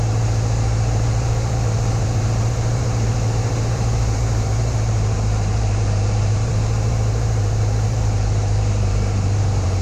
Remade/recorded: remade